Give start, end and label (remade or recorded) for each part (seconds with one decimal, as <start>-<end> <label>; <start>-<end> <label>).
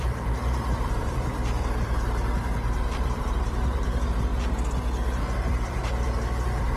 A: 0.0-4.3 remade; 4.3-5.2 recorded; 5.2-6.8 remade